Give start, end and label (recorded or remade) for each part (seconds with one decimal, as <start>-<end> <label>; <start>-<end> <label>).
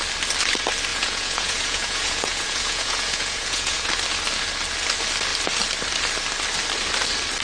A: 0.0-0.9 recorded; 0.9-3.9 remade; 3.9-7.4 recorded